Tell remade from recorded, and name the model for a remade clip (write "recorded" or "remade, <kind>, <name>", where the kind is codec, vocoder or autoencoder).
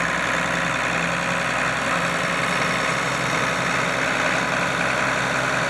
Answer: recorded